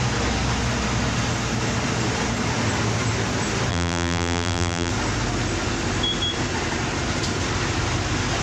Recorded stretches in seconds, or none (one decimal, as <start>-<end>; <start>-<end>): 0.0-3.7; 4.9-8.4